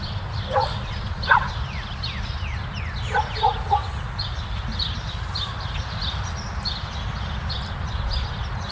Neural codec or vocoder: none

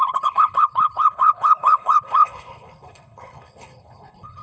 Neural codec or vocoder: codec, HILCodec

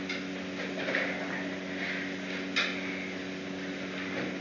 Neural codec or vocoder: none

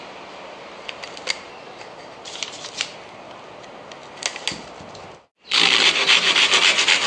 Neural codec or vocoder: none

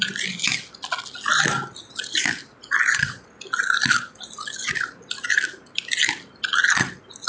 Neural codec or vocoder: none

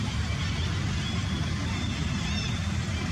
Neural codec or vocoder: none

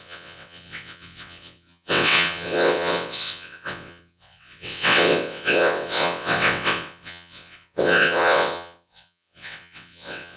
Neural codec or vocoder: vocoder, WaveNeXt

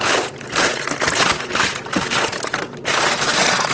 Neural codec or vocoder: none